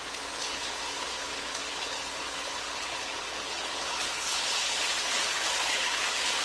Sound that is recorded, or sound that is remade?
remade